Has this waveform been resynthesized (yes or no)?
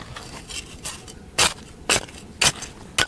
no